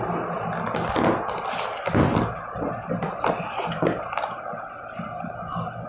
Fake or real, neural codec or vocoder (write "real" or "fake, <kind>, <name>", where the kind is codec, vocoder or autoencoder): real